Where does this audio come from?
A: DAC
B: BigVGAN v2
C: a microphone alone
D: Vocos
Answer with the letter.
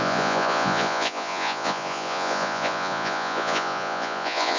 D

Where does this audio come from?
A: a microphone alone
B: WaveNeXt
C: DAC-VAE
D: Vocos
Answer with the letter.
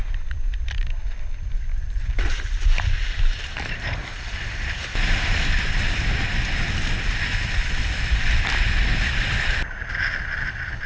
A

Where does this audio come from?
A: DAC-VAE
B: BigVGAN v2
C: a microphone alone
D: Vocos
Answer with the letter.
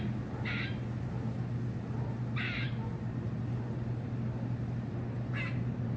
C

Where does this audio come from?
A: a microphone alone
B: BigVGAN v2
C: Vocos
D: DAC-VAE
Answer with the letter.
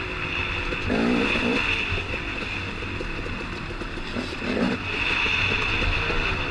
A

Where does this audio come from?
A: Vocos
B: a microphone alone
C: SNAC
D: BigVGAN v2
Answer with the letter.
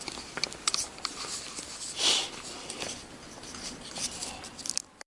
D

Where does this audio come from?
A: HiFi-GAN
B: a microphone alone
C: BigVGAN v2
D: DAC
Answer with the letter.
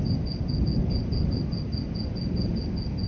B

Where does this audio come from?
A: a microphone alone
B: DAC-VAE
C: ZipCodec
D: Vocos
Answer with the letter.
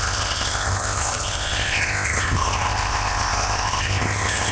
C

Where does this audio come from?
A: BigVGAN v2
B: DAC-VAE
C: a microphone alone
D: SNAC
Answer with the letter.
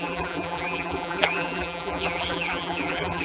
A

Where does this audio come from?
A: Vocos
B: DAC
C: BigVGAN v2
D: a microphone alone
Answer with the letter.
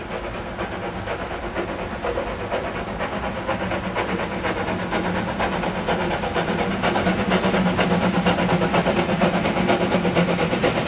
D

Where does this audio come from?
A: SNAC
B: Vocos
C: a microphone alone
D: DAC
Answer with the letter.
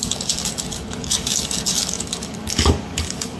D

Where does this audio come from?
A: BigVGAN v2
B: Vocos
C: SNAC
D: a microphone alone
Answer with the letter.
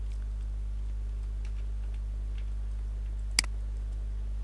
D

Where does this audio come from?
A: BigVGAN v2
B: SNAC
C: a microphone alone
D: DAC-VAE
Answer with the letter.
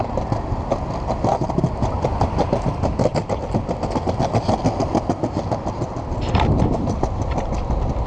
C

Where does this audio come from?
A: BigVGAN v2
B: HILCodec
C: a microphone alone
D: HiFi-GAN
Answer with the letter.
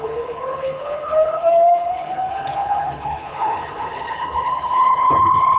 B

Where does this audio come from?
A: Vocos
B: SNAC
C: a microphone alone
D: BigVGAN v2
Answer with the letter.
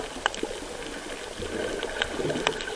C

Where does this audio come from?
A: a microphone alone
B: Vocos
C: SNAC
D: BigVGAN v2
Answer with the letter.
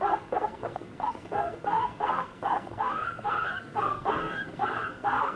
C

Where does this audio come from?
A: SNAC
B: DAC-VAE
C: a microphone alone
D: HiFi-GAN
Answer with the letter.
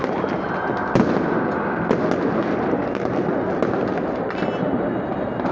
C